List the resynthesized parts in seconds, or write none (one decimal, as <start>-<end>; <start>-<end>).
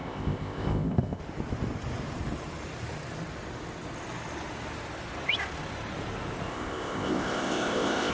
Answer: 0.0-1.2; 6.5-8.1